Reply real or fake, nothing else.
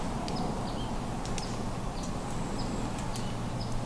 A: real